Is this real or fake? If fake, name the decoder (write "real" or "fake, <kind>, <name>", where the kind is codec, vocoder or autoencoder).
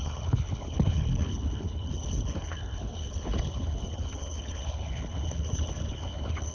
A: fake, codec, HILCodec